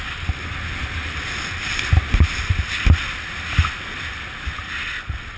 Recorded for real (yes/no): yes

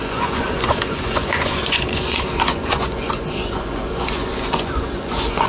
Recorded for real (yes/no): no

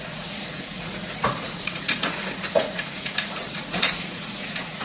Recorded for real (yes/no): no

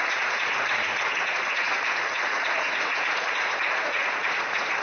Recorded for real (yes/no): no